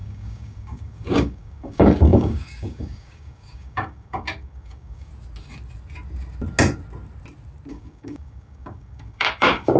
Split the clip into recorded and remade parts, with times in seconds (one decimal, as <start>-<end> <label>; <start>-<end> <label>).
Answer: 0.0-5.1 remade; 5.1-7.7 recorded; 7.7-9.8 remade